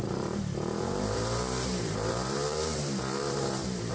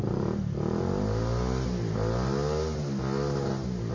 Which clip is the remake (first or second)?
first